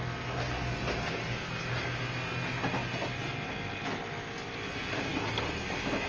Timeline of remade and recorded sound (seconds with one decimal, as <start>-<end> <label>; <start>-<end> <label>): 0.0-6.1 recorded